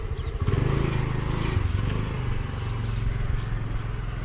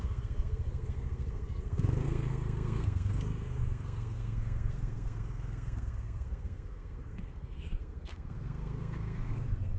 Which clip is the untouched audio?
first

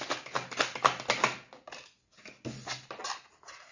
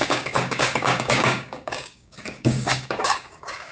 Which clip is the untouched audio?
first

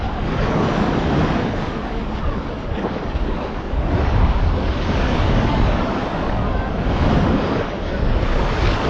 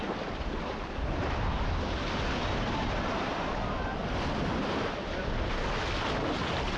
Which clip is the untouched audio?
second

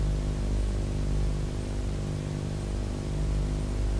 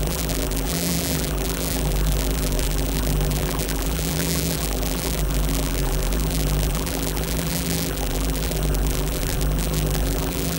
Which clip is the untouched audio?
first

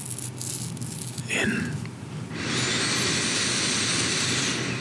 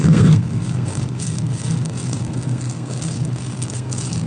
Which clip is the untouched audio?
first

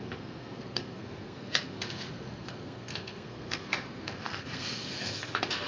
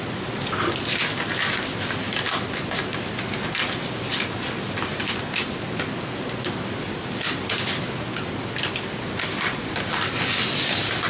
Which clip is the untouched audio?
second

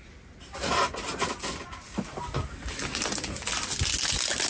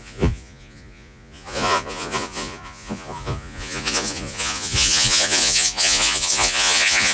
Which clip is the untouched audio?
first